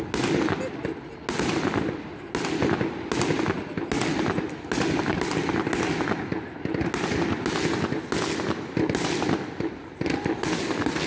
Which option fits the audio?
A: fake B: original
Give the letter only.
B